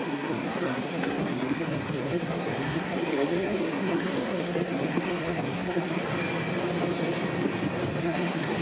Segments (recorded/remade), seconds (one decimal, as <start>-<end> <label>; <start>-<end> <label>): 0.0-6.1 remade; 6.1-8.0 recorded; 8.0-8.6 remade